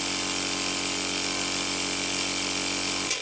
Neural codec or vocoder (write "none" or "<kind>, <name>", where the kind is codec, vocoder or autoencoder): none